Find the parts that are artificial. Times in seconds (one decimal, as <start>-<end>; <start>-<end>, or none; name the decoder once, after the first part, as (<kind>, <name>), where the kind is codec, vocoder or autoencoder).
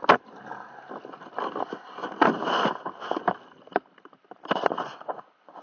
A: none